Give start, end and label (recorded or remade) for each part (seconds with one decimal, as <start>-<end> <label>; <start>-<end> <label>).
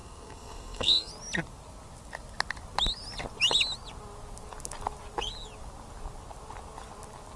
0.0-1.1 remade; 1.1-7.4 recorded